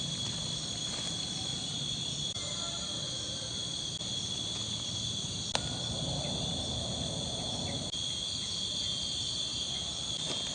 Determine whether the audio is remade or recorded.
recorded